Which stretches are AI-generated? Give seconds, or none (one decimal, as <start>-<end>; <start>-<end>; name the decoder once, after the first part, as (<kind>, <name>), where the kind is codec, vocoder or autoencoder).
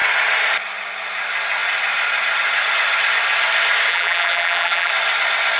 3.9-4.9 (vocoder, BigVGAN v2)